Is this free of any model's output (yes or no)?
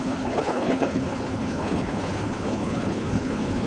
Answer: no